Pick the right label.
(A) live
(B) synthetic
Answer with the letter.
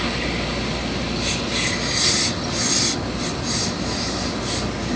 A